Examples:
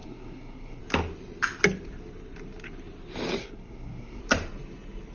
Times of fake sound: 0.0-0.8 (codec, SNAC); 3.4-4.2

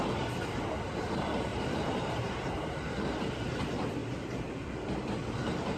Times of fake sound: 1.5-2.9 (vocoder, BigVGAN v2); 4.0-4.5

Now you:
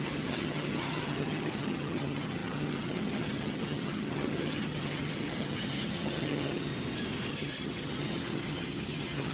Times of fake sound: 0.0-6.7 (vocoder, HiFi-GAN); 7.3-9.3